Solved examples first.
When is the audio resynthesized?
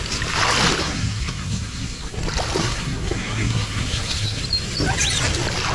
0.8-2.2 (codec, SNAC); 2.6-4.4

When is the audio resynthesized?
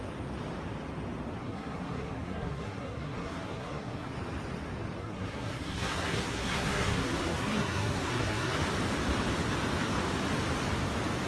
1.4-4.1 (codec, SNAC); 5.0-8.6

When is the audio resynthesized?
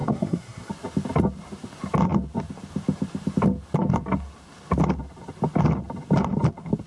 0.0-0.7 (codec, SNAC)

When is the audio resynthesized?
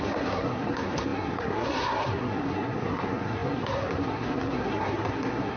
0.0-5.6 (codec, SNAC)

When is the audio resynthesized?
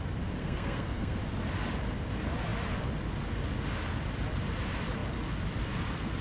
0.4-1.2 (codec, SNAC)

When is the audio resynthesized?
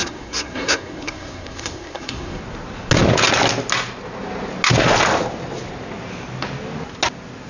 0.0-2.4 (codec, SNAC)